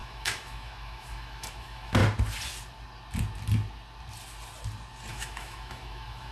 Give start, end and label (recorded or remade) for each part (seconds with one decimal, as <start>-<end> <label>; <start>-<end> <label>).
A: 0.0-2.0 remade; 2.0-5.1 recorded; 5.1-6.3 remade